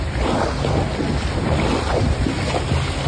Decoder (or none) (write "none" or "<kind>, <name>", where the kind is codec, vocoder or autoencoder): none